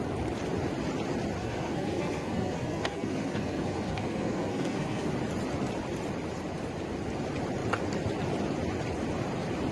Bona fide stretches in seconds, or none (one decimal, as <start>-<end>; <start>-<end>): 0.0-1.4; 5.1-9.7